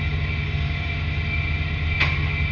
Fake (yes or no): no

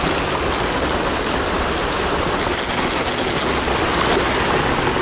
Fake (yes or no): no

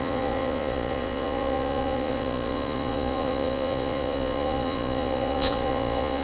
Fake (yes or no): yes